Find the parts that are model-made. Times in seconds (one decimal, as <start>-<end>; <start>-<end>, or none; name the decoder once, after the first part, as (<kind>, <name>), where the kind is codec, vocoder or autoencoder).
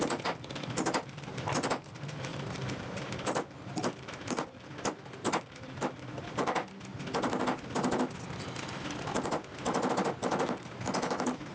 0.0-6.9 (vocoder, BigVGAN v2); 9.9-11.5